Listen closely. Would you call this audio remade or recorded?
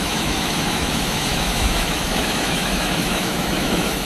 remade